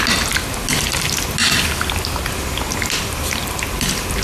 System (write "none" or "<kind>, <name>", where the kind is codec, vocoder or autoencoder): none